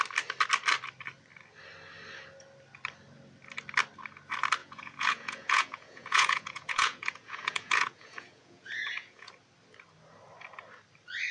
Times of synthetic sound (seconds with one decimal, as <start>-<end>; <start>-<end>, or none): 4.6-9.3